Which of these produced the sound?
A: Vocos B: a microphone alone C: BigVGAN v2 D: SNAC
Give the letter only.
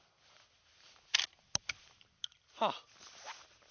B